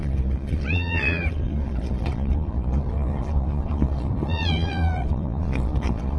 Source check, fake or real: fake